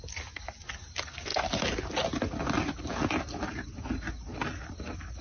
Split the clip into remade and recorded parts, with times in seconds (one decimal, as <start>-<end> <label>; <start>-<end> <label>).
0.0-5.2 recorded